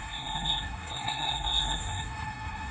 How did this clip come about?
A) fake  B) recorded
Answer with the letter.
A